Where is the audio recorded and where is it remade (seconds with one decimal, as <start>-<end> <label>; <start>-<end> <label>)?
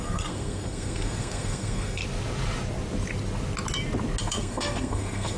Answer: 0.0-2.0 remade; 2.0-4.2 recorded; 4.2-5.4 remade